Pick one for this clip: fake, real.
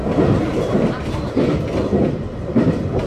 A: real